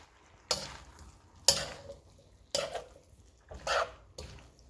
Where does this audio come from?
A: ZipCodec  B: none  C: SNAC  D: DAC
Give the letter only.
B